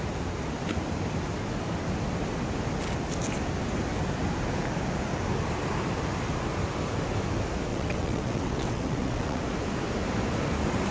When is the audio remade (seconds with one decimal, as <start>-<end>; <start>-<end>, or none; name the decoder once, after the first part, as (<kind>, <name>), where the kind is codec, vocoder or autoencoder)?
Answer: 7.7-9.4 (vocoder, WaveNeXt)